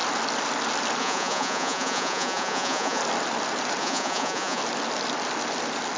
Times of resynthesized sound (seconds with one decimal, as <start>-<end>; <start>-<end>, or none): 1.0-3.0; 3.8-4.6